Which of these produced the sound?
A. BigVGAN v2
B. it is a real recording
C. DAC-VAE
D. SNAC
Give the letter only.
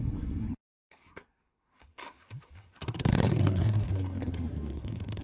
D